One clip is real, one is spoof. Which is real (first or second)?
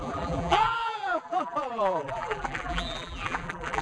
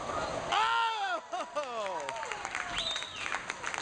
second